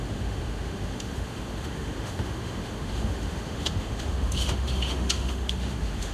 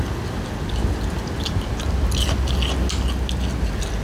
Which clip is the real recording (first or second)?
second